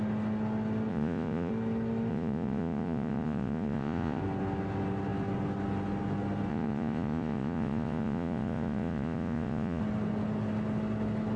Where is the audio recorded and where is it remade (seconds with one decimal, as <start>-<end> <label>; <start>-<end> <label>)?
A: 0.0-0.9 recorded; 0.9-1.5 remade; 1.5-2.1 recorded; 2.1-4.2 remade; 4.2-6.5 recorded; 6.5-9.8 remade; 9.8-11.4 recorded